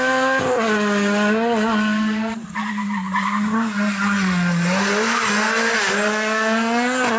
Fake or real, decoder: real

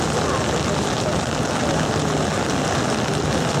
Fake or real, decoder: real